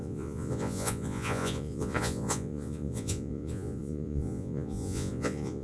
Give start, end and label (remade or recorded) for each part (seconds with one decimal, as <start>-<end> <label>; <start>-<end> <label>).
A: 0.0-5.6 remade